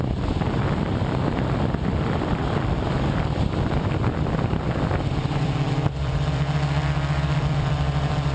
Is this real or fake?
fake